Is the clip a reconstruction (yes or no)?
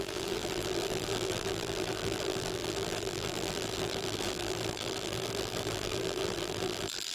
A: yes